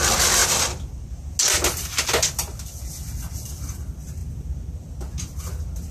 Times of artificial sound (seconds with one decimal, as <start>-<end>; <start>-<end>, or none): none